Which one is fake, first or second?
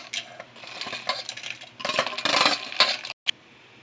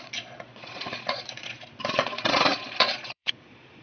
second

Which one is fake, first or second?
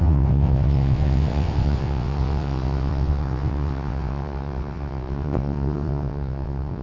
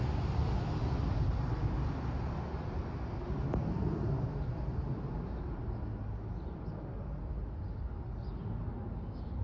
first